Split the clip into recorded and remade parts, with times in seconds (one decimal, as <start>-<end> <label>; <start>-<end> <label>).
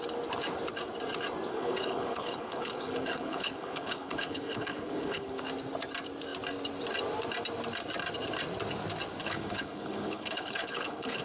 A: 0.0-1.5 recorded; 1.5-5.4 remade; 5.4-9.2 recorded; 9.2-11.2 remade